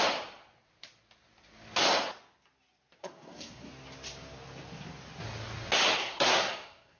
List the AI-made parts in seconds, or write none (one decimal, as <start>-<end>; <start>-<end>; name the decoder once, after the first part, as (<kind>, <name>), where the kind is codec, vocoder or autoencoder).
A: 3.0-3.7 (codec, SNAC); 6.0-7.0